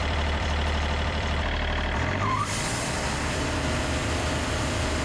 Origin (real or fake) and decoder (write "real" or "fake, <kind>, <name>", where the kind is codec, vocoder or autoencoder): fake, vocoder, BigVGAN v2